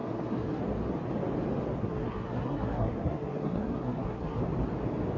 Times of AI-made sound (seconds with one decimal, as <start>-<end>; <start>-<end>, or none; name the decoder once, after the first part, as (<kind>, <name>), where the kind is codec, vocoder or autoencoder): 0.0-0.6 (codec, SNAC); 1.8-4.4